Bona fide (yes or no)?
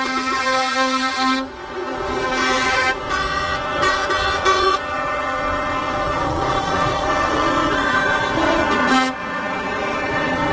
no